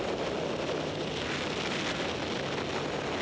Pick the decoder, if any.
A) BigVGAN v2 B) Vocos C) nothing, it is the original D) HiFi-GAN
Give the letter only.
C